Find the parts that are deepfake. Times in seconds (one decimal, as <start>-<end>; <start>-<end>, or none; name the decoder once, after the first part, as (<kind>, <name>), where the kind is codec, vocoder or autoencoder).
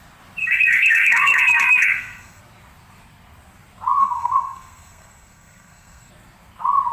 0.4-2.4 (codec, SNAC); 4.0-6.1